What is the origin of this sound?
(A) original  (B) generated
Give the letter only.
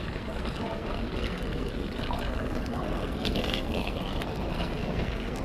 B